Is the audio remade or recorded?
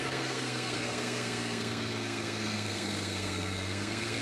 remade